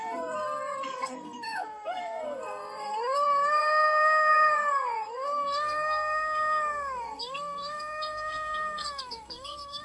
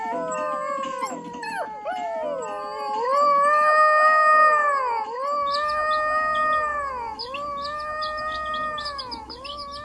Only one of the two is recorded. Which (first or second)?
second